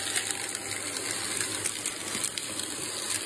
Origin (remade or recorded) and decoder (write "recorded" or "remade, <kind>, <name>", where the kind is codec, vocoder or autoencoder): recorded